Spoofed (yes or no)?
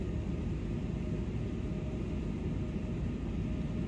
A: no